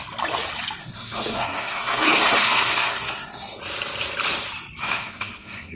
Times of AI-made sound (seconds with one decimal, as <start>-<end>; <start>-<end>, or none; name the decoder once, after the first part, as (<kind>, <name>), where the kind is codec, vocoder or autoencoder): 0.8-3.6 (codec, SNAC); 4.8-5.8